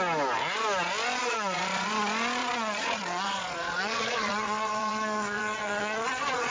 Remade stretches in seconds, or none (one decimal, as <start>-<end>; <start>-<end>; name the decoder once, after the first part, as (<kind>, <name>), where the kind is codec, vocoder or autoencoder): 1.2-1.9 (vocoder, Vocos); 2.4-6.5